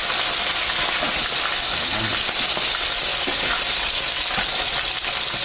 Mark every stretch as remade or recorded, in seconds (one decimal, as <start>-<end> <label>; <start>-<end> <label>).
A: 0.0-5.4 recorded